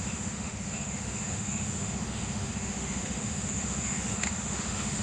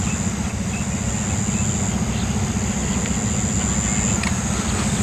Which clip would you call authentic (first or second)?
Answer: second